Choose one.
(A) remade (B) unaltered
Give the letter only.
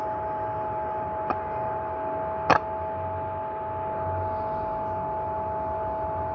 B